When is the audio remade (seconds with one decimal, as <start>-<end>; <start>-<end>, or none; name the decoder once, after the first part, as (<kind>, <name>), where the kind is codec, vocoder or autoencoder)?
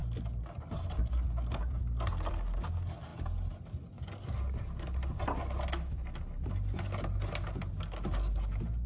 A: none